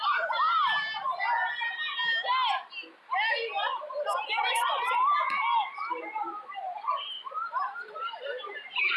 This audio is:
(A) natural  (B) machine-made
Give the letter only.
A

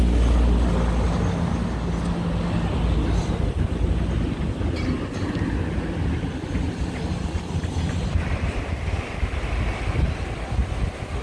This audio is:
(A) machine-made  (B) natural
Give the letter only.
B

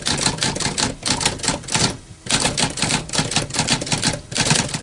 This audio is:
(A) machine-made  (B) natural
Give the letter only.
B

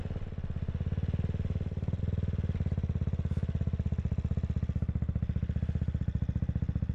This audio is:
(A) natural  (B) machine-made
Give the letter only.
A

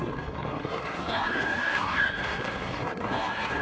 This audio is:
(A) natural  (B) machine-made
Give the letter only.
B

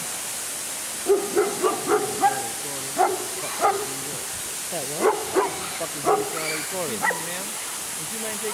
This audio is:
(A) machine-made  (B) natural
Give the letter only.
B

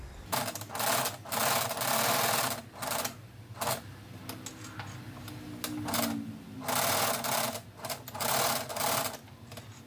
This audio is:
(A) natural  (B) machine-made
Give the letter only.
A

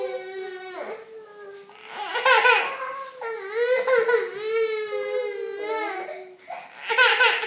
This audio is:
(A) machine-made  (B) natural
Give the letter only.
B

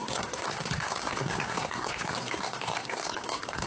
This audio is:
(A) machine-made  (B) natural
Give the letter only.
A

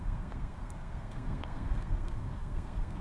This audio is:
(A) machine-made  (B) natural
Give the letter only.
A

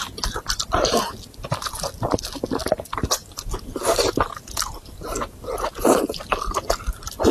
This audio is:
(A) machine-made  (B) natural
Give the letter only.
B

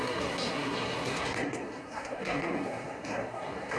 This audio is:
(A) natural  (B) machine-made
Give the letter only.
B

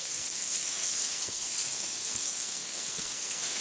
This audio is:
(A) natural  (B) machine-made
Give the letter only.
B